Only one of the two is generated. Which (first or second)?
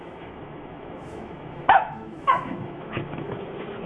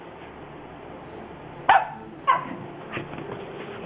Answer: first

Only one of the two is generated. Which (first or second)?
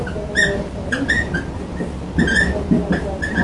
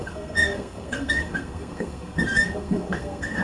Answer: second